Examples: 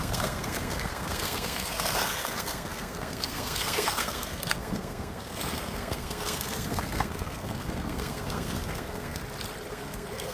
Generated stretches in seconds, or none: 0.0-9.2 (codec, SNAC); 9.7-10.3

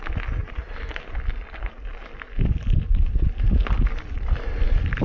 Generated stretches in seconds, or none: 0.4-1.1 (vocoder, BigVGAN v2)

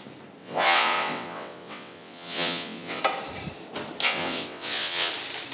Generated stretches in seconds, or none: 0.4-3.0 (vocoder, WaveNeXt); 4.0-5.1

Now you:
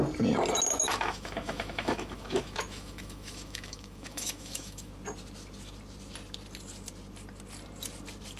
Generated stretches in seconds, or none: 0.7-4.9 (autoencoder, DAC-VAE)

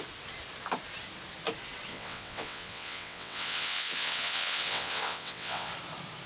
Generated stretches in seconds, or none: 1.9-5.7 (vocoder, WaveNeXt)

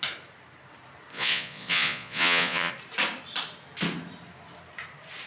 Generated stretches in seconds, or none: 1.1-2.7 (vocoder, Vocos)